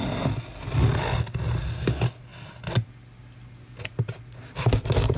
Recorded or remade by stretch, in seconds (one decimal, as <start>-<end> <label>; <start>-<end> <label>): 0.0-5.2 recorded